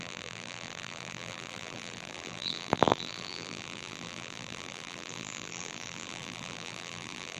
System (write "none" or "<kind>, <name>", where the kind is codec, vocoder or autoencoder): vocoder, BigVGAN v2